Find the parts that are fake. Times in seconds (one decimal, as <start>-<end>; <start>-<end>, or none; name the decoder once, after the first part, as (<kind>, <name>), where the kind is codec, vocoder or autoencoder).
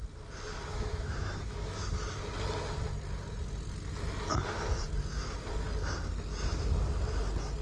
0.7-1.9 (autoencoder, DAC-VAE)